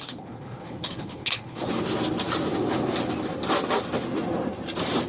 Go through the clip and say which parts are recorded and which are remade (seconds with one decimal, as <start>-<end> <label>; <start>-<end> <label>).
0.0-1.7 remade; 1.7-5.1 recorded